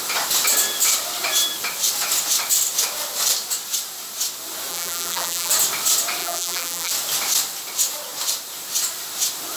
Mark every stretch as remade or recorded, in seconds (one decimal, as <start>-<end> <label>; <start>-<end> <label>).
0.0-4.7 recorded; 4.7-5.5 remade; 5.5-6.2 recorded; 6.2-6.9 remade; 6.9-9.6 recorded